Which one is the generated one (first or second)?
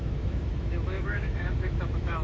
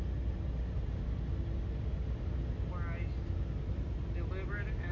first